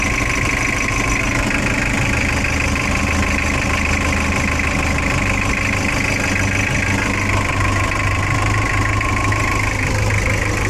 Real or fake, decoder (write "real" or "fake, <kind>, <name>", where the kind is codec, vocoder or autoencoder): real